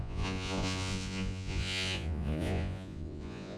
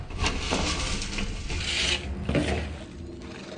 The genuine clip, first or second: second